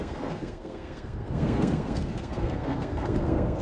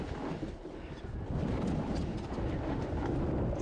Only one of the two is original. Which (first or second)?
second